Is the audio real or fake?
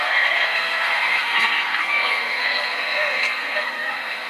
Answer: fake